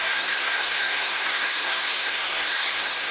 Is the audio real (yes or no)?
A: no